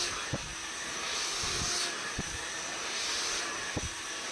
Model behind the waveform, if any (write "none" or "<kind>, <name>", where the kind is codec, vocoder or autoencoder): none